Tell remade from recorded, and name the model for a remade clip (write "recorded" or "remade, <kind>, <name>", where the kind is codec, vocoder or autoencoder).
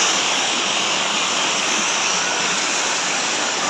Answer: remade, codec, DAC